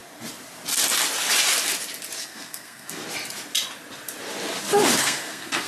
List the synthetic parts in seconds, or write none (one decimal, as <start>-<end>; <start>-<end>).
2.2-3.0; 5.0-5.7